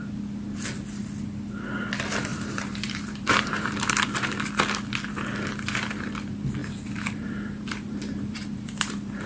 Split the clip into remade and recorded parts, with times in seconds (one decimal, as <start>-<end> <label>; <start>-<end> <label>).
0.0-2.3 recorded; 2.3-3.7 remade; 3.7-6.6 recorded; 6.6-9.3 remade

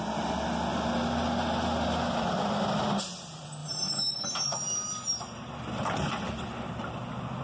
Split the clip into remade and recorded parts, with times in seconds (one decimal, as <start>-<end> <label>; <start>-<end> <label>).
0.0-3.6 recorded; 3.6-7.4 remade

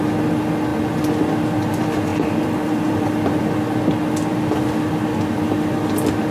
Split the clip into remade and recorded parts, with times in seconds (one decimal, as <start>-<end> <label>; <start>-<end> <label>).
0.0-2.1 recorded; 2.1-3.4 remade; 3.4-6.3 recorded

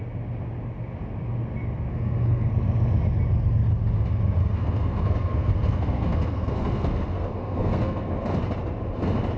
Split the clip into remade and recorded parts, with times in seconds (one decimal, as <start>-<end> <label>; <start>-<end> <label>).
0.0-1.9 recorded; 1.9-2.5 remade; 2.5-4.4 recorded; 4.4-8.2 remade; 8.2-9.4 recorded

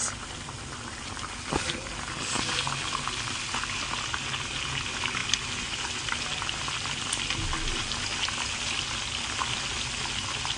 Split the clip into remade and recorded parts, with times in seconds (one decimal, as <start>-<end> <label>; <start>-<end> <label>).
0.0-10.6 recorded

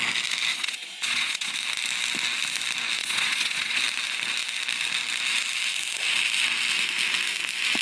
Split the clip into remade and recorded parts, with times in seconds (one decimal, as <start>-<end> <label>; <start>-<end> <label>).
0.0-0.5 recorded; 0.5-1.5 remade; 1.5-3.0 recorded; 3.0-3.8 remade; 3.8-7.8 recorded

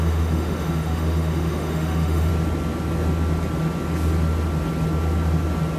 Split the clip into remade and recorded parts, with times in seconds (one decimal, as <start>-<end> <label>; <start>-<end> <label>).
0.0-2.3 remade; 2.3-5.8 recorded